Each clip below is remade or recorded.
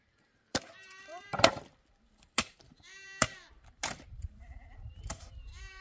remade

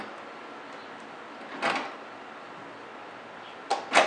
recorded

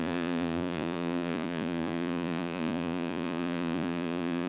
remade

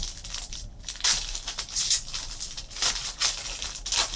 recorded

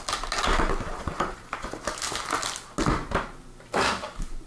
recorded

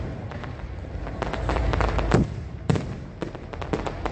recorded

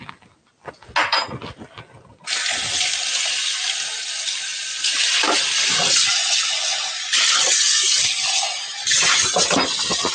recorded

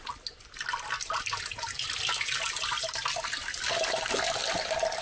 recorded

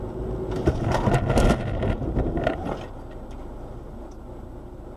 recorded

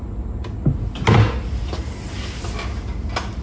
recorded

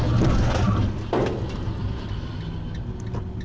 recorded